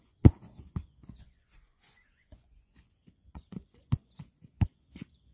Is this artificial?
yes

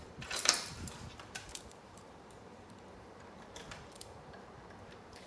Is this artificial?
yes